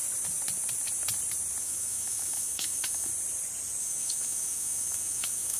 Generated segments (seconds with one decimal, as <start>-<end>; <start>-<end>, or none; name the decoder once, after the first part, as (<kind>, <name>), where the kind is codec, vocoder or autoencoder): 1.6-3.1 (autoencoder, DAC-VAE); 3.8-5.6